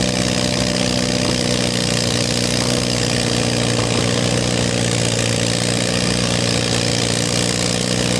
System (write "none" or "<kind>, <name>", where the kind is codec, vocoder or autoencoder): none